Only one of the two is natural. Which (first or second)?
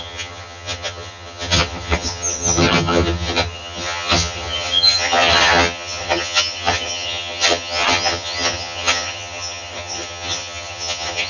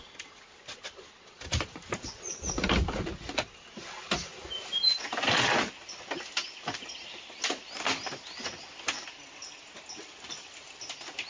second